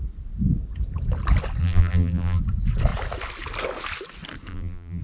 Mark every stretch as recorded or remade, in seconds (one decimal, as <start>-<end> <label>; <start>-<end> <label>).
0.0-1.6 recorded; 1.6-2.4 remade; 2.4-4.5 recorded; 4.5-5.0 remade